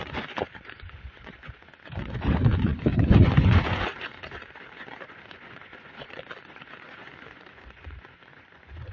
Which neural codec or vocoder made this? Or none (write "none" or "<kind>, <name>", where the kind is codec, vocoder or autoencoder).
vocoder, Vocos